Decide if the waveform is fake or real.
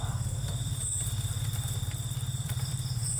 fake